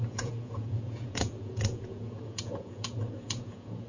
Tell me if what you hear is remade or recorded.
remade